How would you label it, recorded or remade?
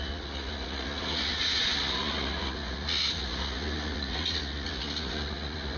remade